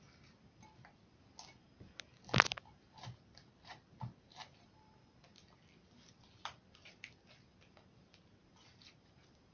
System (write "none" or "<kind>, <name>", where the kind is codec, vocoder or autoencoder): none